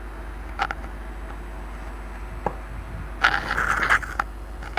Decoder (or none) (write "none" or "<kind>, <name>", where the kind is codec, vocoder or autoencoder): none